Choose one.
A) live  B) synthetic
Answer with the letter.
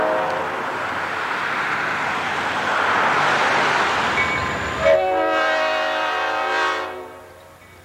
A